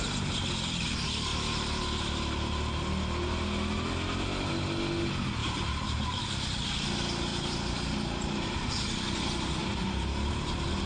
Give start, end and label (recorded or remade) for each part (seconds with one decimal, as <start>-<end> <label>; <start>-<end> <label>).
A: 0.0-5.4 recorded; 5.4-6.2 remade; 6.2-7.3 recorded; 7.3-8.6 remade; 8.6-9.6 recorded; 9.6-10.3 remade; 10.3-10.9 recorded